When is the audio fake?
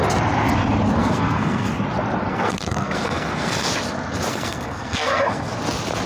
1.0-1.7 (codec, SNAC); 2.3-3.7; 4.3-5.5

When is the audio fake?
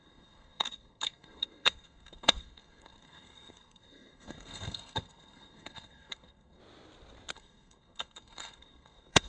0.0-6.6 (codec, SNAC); 7.3-9.3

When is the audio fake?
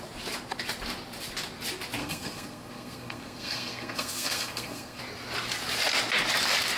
2.0-5.0 (codec, SNAC)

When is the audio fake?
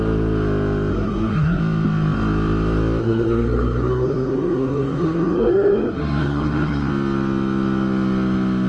0.9-1.6 (codec, SNAC); 3.0-6.9